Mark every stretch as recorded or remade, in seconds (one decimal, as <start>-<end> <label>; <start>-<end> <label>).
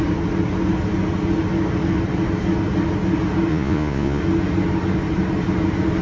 0.0-3.5 recorded; 3.5-4.2 remade; 4.2-6.0 recorded